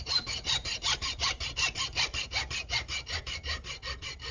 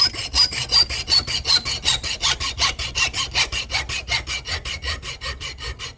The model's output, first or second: first